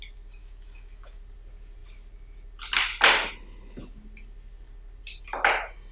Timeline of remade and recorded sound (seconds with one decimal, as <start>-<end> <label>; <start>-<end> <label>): 0.0-0.4 recorded; 0.4-1.2 remade; 1.2-5.9 recorded